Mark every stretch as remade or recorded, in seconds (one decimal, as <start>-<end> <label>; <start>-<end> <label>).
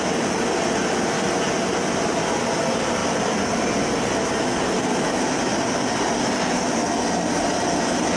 0.0-8.2 recorded